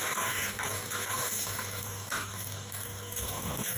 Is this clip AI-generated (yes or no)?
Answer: yes